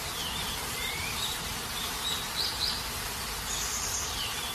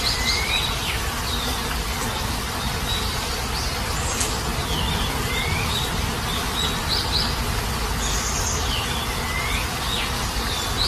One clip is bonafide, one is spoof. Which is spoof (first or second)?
first